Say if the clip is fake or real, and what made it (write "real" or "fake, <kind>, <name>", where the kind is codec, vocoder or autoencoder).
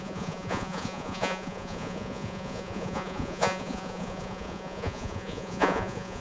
fake, vocoder, Vocos